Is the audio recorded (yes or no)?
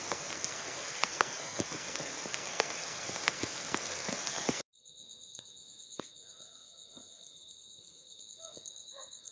no